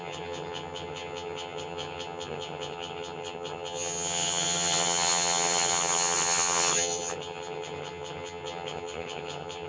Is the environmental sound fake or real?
fake